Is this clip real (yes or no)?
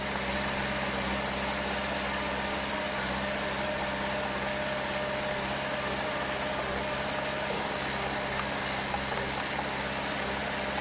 yes